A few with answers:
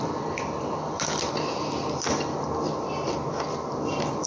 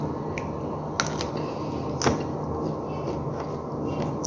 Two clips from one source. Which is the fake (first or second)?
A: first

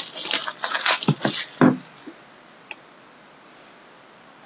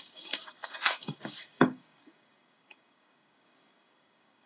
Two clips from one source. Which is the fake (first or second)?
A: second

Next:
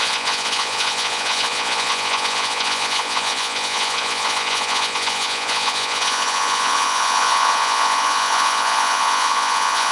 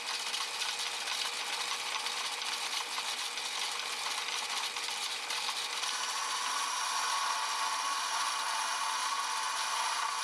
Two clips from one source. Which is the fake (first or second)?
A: first